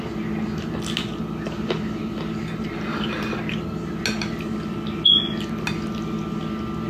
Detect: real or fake real